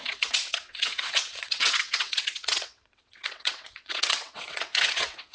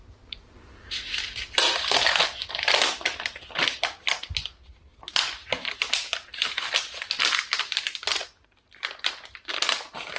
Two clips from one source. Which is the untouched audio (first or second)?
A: second